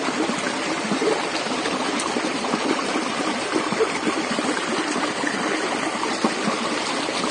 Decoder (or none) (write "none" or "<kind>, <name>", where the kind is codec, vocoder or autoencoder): none